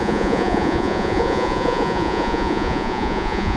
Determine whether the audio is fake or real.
fake